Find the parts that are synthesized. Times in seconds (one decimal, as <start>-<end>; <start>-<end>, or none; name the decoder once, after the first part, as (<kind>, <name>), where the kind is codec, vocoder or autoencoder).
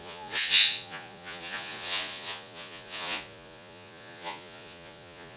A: 0.0-5.4 (vocoder, Vocos)